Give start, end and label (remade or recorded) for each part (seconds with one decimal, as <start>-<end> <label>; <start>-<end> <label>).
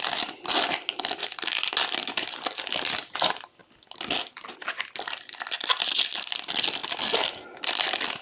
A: 0.0-8.2 recorded